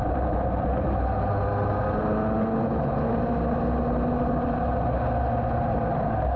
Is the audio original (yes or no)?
yes